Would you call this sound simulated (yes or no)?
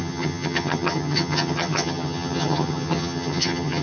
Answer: yes